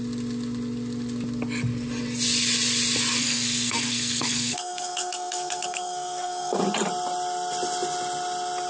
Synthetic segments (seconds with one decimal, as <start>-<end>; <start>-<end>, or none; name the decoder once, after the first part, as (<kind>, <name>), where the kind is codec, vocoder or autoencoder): 3.2-6.6 (codec, SNAC)